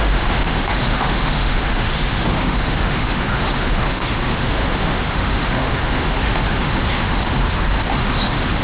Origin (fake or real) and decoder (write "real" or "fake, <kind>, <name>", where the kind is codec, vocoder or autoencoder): fake, autoencoder, DAC-VAE